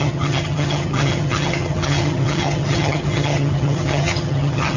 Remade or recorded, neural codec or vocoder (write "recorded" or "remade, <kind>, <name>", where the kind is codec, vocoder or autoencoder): remade, vocoder, HiFi-GAN